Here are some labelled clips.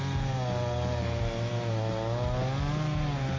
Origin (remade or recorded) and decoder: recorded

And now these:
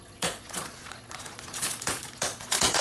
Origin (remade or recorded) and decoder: remade, vocoder, Vocos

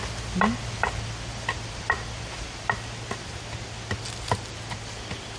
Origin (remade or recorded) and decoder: recorded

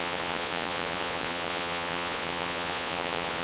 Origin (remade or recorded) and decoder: remade, vocoder, Vocos